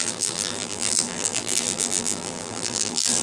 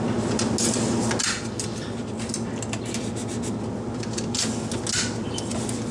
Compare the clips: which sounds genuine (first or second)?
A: second